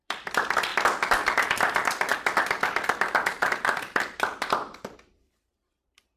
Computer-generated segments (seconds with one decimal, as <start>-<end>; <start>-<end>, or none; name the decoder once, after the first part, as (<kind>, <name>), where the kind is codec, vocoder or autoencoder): 0.0-0.7 (vocoder, BigVGAN v2); 1.5-6.2